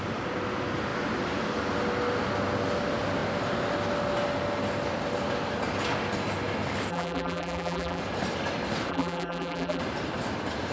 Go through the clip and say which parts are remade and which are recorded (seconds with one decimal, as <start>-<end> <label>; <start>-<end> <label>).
0.0-6.9 recorded; 6.9-8.0 remade; 8.0-8.9 recorded; 8.9-9.8 remade; 9.8-10.7 recorded